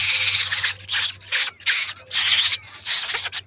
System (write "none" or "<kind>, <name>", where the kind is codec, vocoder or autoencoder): none